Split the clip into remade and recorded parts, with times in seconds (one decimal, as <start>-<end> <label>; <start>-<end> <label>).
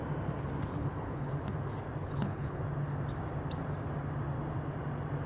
0.0-0.7 recorded; 0.7-1.3 remade; 1.3-2.0 recorded; 2.0-2.6 remade; 2.6-5.3 recorded